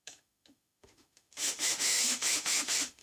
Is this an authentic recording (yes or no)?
no